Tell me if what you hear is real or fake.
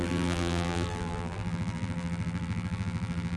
fake